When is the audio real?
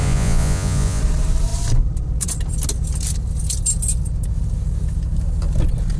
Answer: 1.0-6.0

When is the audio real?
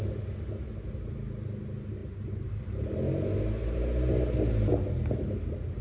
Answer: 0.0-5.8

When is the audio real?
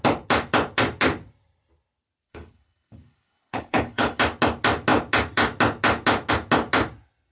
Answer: 0.0-2.3; 4.2-7.3